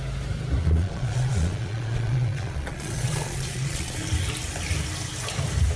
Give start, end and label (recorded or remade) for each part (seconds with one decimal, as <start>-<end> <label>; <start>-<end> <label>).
0.0-0.6 recorded; 0.6-4.1 remade; 4.1-5.8 recorded